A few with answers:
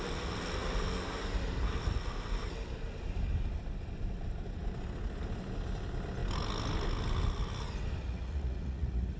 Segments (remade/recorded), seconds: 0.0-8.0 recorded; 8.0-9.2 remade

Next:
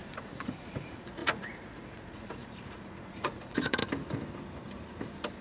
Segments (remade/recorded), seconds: 0.0-3.8 remade; 3.8-5.4 recorded

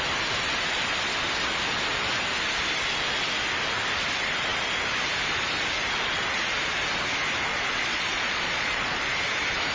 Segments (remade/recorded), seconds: 0.0-7.5 recorded; 7.5-9.0 remade; 9.0-9.7 recorded